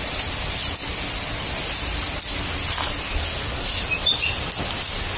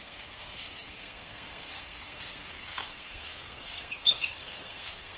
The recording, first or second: first